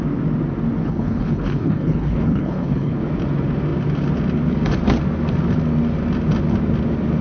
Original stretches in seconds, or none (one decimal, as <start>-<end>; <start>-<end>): 0.0-0.8; 3.0-7.2

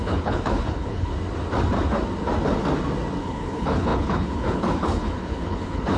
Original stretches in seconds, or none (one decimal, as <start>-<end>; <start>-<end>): 1.1-3.2

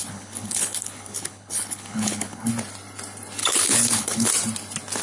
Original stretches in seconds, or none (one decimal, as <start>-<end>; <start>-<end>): 2.5-3.4; 4.3-5.0

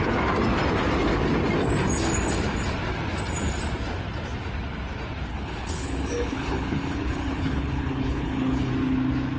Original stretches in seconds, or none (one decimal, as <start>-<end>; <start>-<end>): 0.0-5.3; 8.7-9.4

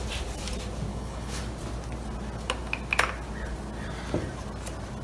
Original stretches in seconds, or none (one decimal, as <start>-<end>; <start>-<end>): 0.0-0.9; 1.4-5.0

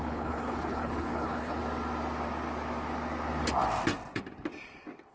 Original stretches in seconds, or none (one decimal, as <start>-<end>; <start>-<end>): 1.6-5.1

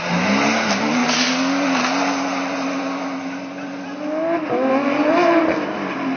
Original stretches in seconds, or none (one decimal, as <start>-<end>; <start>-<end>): 0.0-6.2

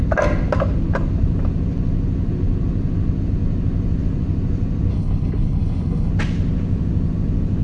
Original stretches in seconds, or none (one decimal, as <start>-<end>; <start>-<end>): 0.0-4.9; 6.1-7.6